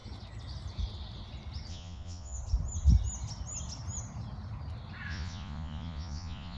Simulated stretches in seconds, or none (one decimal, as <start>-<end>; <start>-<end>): 1.7-2.4; 5.1-6.6